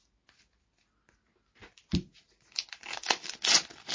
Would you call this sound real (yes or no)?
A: yes